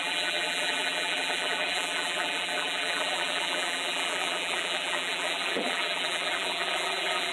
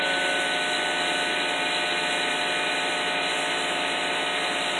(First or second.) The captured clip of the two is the second